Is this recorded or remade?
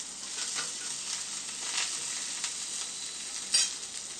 recorded